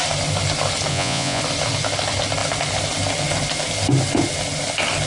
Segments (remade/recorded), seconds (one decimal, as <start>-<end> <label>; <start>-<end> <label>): 0.0-0.9 recorded; 0.9-1.4 remade; 1.4-5.1 recorded